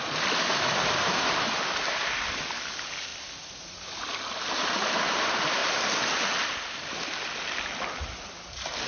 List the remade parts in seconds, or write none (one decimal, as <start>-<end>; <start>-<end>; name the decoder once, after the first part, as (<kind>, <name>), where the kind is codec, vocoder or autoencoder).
none